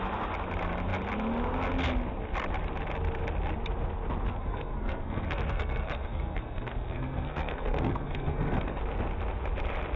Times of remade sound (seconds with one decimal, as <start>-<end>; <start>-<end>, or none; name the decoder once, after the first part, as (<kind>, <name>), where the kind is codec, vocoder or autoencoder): 4.3-8.8 (codec, SNAC)